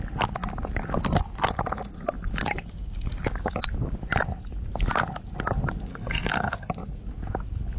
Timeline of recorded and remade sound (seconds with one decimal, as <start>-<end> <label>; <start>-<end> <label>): 0.0-5.9 recorded; 5.9-6.7 remade; 6.7-7.8 recorded